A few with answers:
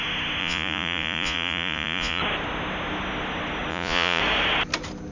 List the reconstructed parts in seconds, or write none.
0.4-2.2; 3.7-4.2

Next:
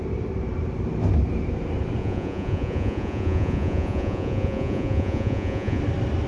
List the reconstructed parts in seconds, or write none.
2.0-5.8

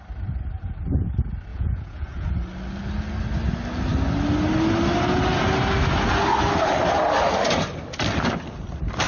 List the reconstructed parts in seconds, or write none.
1.5-2.3

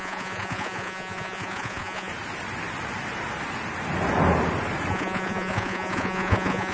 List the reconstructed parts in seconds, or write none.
0.0-2.1; 4.9-6.7

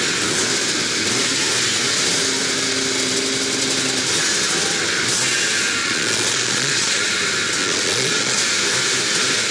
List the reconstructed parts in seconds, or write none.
5.8-7.1; 7.6-8.4

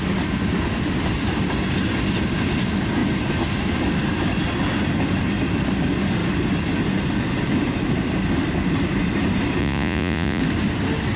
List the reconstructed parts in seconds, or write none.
9.6-10.4

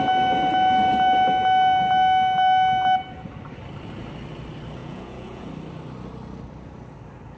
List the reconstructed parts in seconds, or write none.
4.8-5.5